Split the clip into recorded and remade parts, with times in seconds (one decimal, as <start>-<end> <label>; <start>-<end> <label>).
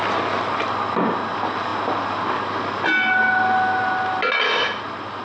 0.0-5.2 recorded